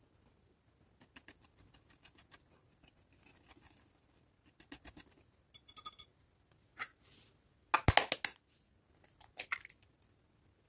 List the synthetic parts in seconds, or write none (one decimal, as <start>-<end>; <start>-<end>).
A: none